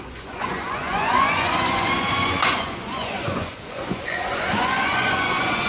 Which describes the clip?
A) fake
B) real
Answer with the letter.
A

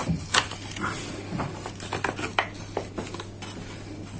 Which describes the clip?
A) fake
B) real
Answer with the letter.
B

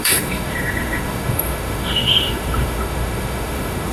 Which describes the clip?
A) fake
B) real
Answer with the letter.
A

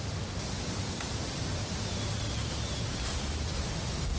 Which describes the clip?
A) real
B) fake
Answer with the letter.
B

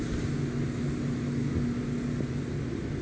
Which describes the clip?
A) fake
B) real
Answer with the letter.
B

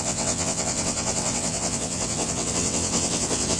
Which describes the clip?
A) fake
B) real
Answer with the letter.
A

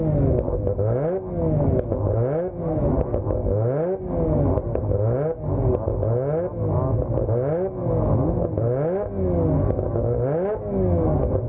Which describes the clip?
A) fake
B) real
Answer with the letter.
B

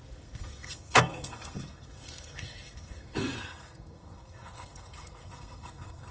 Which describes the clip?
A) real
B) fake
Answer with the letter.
B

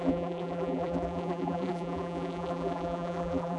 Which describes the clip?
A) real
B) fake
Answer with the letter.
B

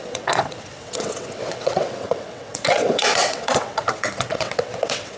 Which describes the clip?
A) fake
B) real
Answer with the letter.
A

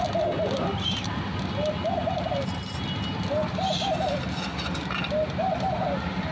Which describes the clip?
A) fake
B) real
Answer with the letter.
B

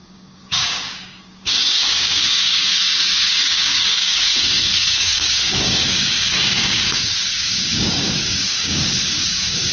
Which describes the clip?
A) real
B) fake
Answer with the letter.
B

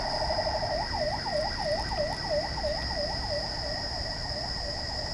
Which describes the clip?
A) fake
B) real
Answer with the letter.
B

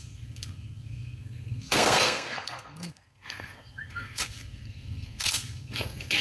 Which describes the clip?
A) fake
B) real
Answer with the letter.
A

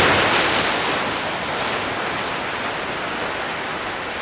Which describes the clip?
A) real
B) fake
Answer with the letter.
A